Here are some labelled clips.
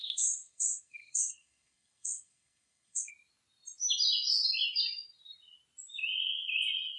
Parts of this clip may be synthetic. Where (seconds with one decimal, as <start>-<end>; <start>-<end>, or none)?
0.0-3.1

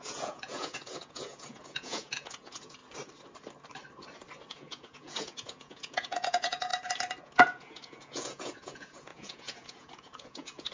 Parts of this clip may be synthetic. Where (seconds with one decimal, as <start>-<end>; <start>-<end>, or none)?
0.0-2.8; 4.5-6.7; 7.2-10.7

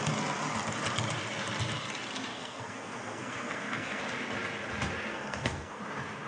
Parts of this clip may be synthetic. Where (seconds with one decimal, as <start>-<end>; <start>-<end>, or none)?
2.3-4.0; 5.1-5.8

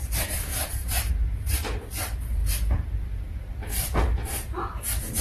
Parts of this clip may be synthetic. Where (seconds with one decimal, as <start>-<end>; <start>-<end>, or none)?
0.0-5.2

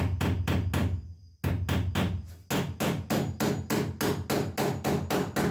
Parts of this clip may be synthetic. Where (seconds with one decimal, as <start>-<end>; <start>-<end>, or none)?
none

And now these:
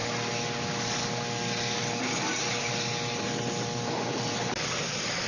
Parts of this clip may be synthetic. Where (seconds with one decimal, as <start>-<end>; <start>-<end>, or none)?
none

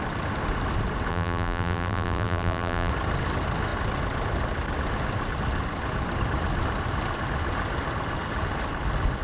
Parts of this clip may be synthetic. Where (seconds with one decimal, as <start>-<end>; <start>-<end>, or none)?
1.1-2.9

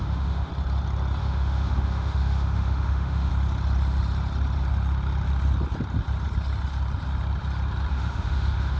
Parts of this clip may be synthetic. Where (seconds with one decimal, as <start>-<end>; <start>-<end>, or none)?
0.0-0.5; 1.2-3.3; 7.9-8.8